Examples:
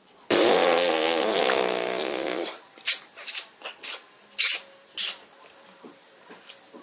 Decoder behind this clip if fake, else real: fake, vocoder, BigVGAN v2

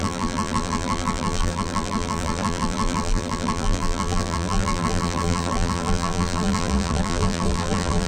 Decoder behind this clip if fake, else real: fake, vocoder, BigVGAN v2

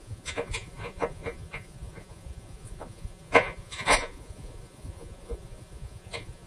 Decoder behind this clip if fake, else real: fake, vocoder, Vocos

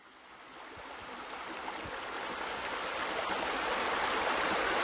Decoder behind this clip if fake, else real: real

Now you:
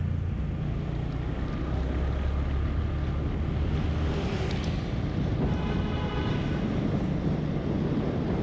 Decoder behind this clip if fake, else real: real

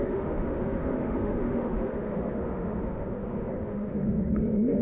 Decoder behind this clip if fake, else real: fake, autoencoder, DAC-VAE